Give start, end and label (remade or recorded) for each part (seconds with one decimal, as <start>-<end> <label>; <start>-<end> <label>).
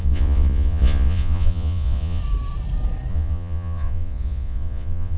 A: 0.0-2.2 remade; 2.2-3.1 recorded; 3.1-5.2 remade